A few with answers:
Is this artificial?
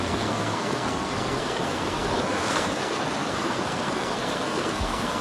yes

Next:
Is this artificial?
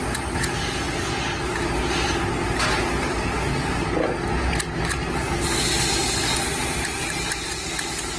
no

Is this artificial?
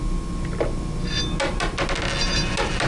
no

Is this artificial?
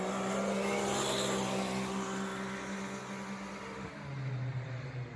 no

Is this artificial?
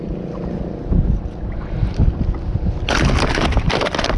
no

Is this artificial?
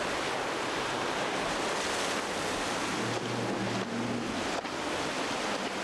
no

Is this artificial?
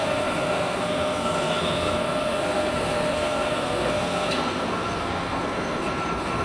yes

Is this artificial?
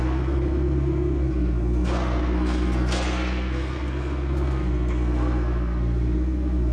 yes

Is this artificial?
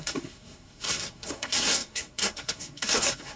yes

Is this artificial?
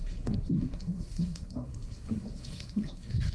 yes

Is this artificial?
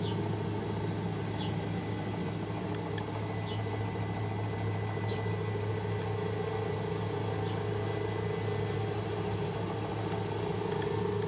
no